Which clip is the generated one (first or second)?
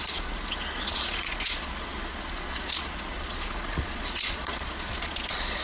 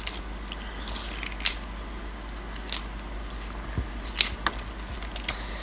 first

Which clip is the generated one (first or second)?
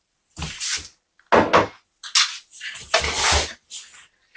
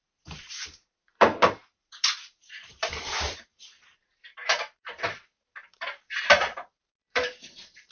second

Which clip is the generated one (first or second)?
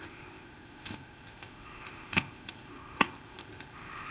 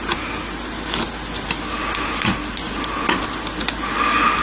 first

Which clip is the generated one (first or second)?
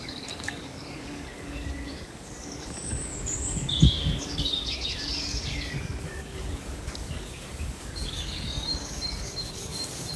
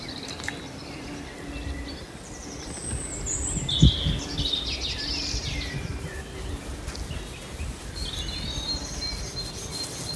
first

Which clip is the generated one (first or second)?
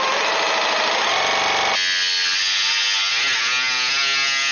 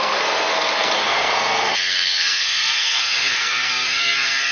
second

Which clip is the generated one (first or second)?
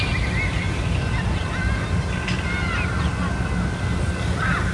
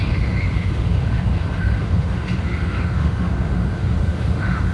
second